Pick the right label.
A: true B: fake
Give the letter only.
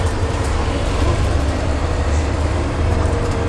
B